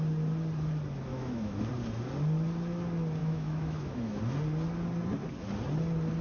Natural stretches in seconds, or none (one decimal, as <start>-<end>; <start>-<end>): 0.0-1.1; 1.7-3.2; 4.2-6.2